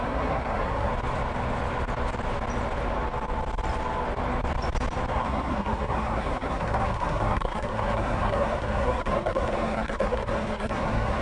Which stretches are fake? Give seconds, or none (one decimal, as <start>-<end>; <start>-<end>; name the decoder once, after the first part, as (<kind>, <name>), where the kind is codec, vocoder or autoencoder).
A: 0.0-0.9 (codec, SNAC); 5.1-11.2

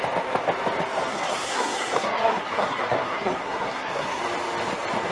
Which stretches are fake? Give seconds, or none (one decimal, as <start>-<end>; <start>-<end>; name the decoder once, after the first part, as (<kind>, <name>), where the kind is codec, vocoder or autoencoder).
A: 1.1-4.2 (codec, SNAC)

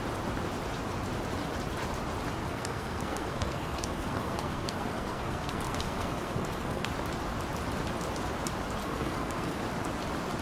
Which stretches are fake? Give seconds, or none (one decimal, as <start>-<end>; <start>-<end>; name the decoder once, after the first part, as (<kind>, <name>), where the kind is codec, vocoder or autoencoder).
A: 2.4-6.9 (codec, SNAC); 8.8-9.6

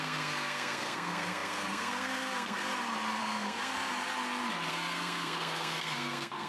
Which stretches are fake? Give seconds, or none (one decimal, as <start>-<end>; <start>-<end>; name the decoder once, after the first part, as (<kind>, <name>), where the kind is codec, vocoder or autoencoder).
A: 0.0-2.7 (codec, SNAC); 3.2-3.7; 4.7-6.5

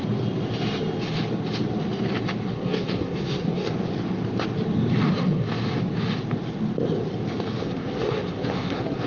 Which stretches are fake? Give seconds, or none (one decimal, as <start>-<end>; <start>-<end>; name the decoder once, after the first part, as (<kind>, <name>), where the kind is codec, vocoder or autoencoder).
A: 2.5-3.7 (codec, SNAC); 5.1-5.5; 7.6-9.1